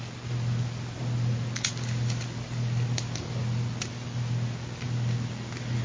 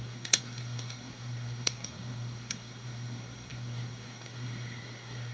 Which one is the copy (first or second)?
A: second